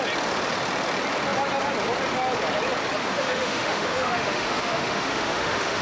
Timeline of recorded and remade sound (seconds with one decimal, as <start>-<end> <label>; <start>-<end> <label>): 0.0-3.0 recorded; 3.0-5.8 remade